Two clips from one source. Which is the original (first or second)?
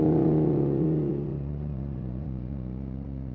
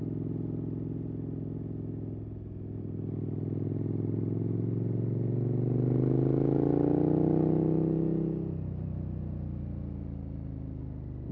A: second